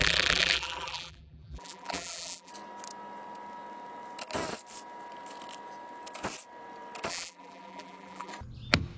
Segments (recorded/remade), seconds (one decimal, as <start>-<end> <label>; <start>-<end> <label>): 0.0-2.5 remade; 2.5-7.1 recorded; 7.1-8.3 remade; 8.3-9.0 recorded